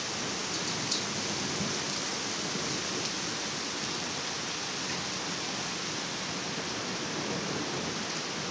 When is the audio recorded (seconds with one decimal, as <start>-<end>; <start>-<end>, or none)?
0.0-8.5